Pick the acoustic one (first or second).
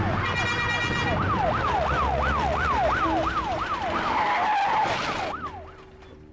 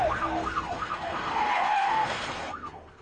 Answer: first